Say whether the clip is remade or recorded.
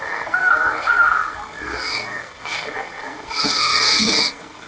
remade